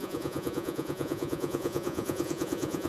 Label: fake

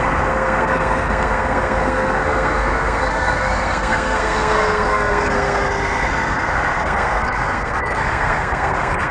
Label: fake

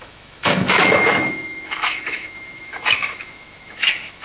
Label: fake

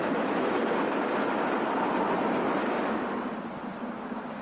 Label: fake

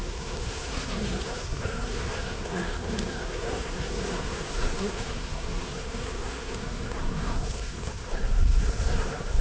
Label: fake